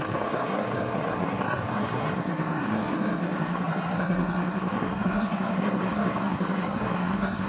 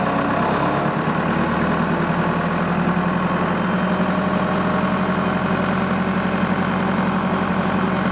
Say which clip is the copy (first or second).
first